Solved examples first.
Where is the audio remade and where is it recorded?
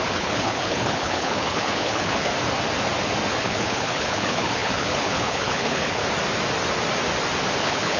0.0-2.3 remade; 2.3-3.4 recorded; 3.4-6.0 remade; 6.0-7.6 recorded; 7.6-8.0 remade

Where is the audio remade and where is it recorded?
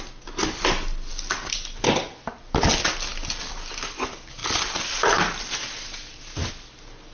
0.0-7.1 recorded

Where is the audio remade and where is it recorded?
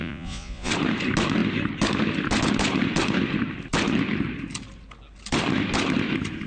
0.0-0.7 remade; 0.7-6.5 recorded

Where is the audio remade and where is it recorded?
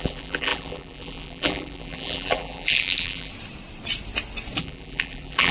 0.0-3.3 remade; 3.3-4.6 recorded; 4.6-5.5 remade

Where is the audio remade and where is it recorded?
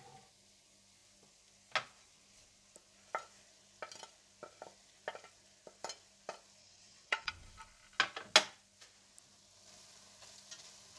0.0-6.6 recorded; 6.6-7.3 remade; 7.3-11.0 recorded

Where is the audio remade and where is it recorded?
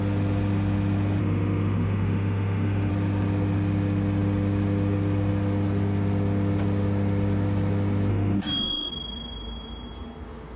0.0-1.2 recorded; 1.2-2.9 remade; 2.9-8.1 recorded; 8.1-8.9 remade; 8.9-10.6 recorded